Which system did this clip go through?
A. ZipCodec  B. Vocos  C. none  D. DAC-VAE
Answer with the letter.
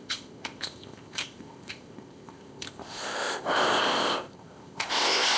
A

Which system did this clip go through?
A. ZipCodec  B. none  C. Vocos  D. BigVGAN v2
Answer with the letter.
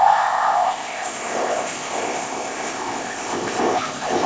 A